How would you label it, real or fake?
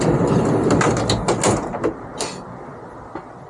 real